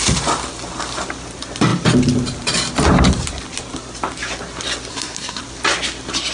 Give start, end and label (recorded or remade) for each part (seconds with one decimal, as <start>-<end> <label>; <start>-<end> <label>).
0.0-4.9 recorded; 4.9-5.4 remade; 5.4-6.3 recorded